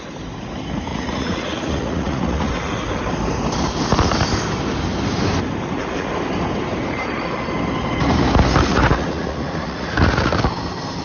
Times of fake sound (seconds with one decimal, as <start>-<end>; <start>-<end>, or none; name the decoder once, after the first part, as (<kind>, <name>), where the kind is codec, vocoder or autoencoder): 0.9-2.5 (vocoder, Vocos); 8.7-10.3